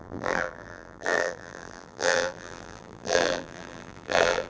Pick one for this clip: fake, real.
fake